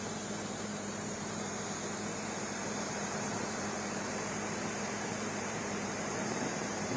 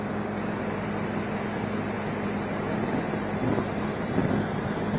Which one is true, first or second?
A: second